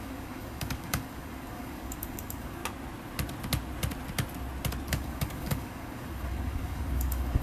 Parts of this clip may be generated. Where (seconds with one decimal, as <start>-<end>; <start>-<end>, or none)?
0.0-2.6; 4.9-7.4